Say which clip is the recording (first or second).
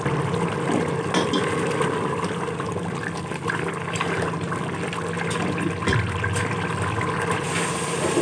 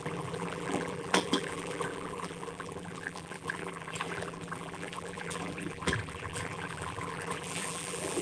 first